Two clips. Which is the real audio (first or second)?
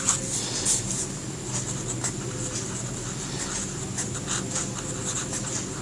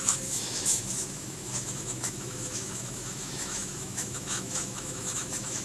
first